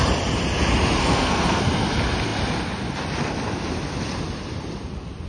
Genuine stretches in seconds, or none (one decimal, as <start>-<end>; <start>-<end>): 0.0-1.0; 1.6-5.3